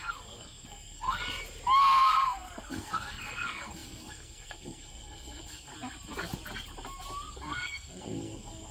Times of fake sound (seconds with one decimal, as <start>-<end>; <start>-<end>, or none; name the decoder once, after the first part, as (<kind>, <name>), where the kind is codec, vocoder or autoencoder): 0.0-1.2 (codec, SNAC); 1.8-5.7; 7.3-8.7